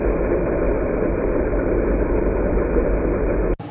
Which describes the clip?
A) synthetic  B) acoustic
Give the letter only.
B